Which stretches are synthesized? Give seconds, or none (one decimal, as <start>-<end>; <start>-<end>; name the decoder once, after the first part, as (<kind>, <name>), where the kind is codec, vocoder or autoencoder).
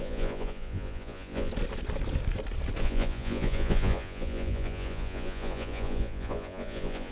0.0-1.5 (vocoder, Vocos); 2.8-7.1